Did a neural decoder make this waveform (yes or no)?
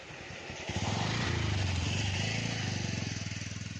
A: no